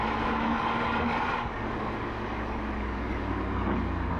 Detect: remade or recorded remade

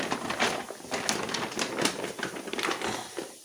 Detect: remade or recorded recorded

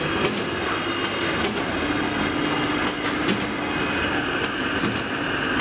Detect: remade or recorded recorded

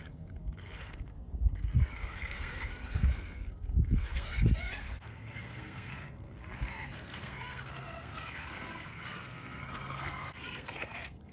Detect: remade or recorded remade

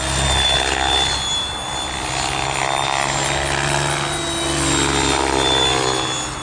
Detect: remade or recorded recorded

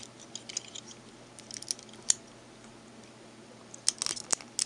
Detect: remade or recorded recorded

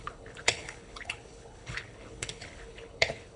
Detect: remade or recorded remade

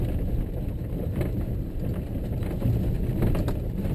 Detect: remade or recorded recorded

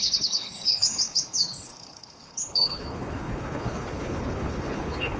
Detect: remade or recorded remade